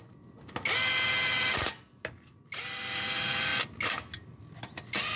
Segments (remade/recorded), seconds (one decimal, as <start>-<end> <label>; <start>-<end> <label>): 0.0-5.2 recorded